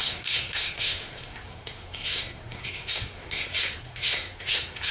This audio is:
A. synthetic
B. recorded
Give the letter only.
A